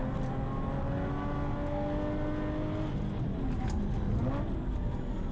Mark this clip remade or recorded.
recorded